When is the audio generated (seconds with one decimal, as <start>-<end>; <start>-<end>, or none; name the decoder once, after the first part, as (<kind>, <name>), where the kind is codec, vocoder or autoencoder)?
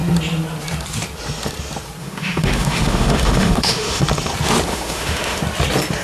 2.0-4.0 (autoencoder, DAC-VAE); 4.7-5.4